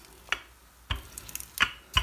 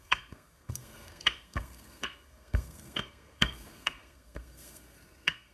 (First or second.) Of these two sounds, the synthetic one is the second